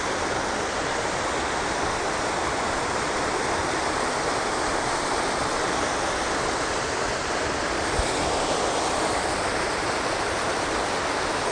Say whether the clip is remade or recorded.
recorded